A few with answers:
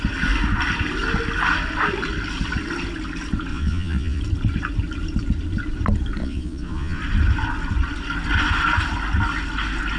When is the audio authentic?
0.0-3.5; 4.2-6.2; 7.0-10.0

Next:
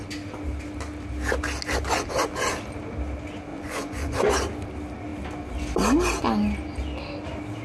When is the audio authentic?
0.0-3.5; 4.3-7.6

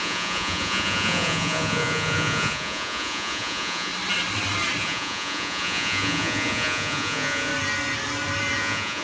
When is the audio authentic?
3.9-4.8; 7.5-8.6

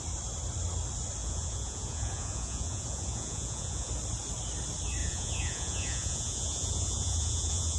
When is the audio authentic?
0.0-1.2; 3.9-5.0

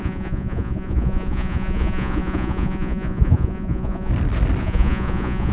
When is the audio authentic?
4.1-4.6

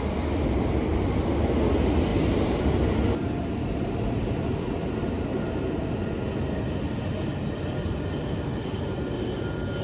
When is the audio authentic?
0.0-9.8